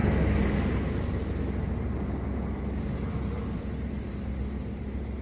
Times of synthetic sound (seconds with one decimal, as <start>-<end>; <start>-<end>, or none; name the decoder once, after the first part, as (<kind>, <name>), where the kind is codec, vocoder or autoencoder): none